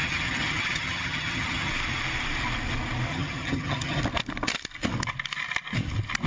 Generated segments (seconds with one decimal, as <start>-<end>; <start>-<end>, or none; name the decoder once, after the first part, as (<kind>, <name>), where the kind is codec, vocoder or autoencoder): 0.0-1.7 (vocoder, HiFi-GAN); 3.1-4.0